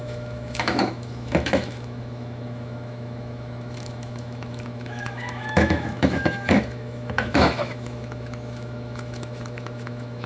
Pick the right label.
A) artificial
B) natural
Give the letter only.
A